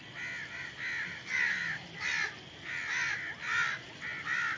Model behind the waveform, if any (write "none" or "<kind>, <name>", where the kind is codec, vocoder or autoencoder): none